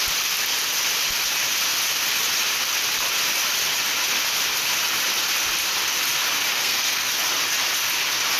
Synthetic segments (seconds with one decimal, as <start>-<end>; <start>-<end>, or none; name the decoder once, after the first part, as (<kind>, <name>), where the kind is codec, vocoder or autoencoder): 6.5-7.1 (codec, SNAC)